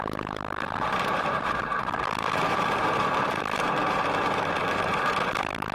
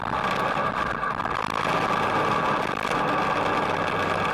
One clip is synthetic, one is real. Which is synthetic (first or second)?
first